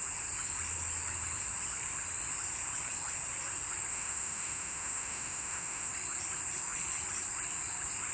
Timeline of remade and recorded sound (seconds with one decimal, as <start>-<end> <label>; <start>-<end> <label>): 0.0-3.9 recorded; 3.9-5.9 remade; 5.9-8.1 recorded